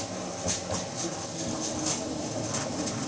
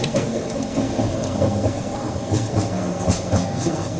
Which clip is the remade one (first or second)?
second